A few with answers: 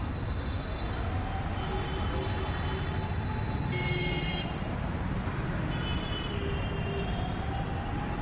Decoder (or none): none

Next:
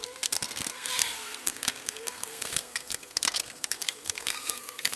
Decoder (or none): codec, SNAC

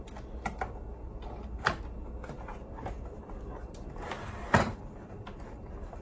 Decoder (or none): none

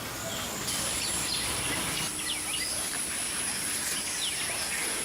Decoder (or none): none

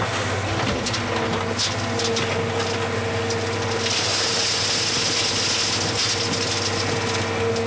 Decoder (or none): none